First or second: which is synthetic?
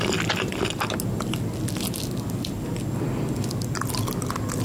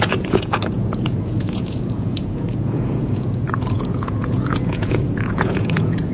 second